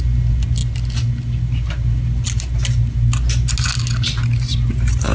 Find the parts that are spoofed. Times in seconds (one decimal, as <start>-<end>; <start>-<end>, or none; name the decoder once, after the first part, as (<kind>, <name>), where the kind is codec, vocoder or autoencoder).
none